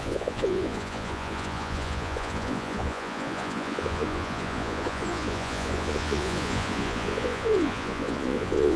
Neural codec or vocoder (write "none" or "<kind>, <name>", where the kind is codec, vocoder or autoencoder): vocoder, Vocos